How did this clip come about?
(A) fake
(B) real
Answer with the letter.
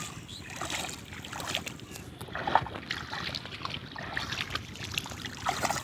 B